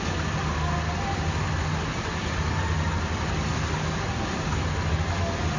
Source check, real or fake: real